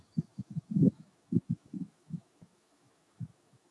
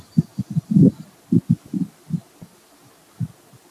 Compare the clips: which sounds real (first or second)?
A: second